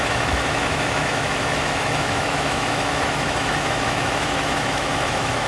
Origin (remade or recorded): remade